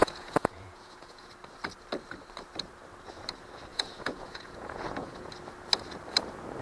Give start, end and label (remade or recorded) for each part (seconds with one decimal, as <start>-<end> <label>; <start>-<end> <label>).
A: 0.0-1.3 remade; 1.3-3.7 recorded; 3.7-5.3 remade; 5.3-6.6 recorded

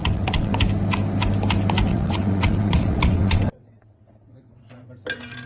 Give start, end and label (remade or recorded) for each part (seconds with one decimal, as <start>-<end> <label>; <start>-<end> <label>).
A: 0.0-0.5 remade; 0.5-1.9 recorded; 1.9-4.9 remade; 4.9-5.5 recorded

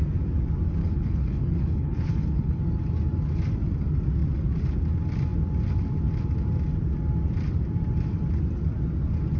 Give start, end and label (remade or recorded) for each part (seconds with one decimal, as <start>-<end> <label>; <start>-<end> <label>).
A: 0.0-0.8 recorded; 0.8-2.6 remade; 2.6-9.4 recorded